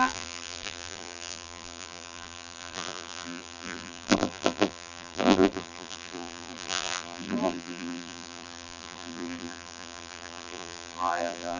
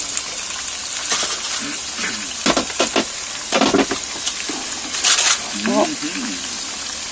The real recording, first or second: second